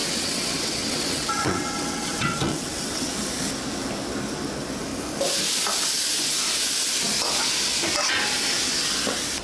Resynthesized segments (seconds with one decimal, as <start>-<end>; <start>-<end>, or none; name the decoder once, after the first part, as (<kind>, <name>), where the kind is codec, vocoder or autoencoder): 0.0-3.1 (vocoder, WaveNeXt)